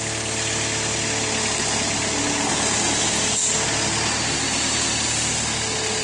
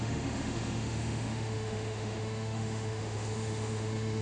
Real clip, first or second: first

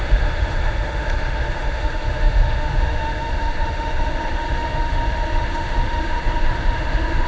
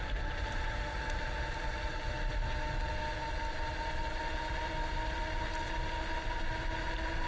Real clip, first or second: second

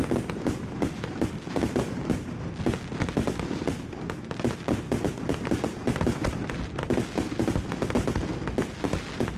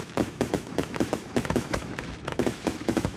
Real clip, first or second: first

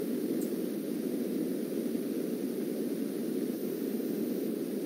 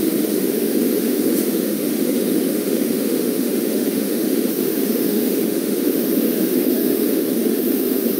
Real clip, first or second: first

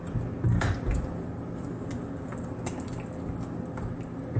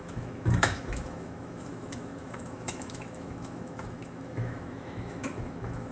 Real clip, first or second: first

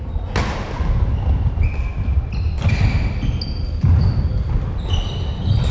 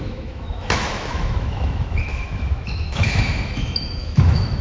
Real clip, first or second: first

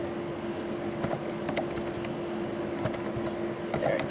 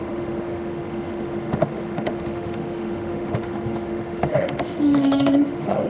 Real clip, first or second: first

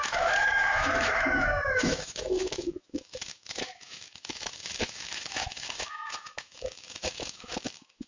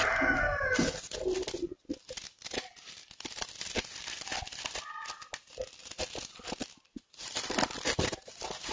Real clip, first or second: second